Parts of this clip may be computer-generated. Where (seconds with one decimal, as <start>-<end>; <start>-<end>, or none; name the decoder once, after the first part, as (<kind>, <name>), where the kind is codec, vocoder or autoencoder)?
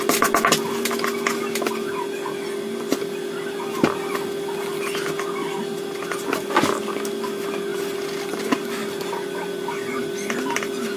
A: none